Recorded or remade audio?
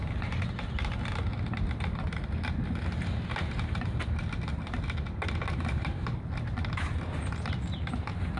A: recorded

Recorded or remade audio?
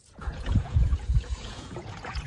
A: remade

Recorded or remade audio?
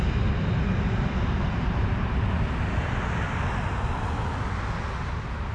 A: recorded